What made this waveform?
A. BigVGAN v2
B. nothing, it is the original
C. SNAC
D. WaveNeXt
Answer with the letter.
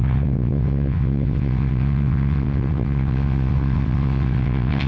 D